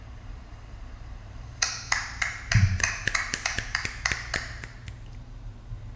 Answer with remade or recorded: remade